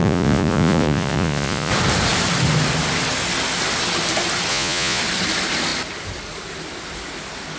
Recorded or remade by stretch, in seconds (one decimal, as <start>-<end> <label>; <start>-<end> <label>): 0.0-1.7 remade; 1.7-4.5 recorded; 4.5-5.0 remade; 5.0-7.6 recorded